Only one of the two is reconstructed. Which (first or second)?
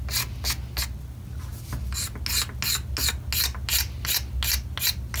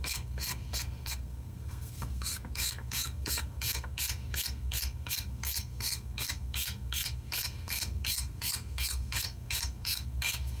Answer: second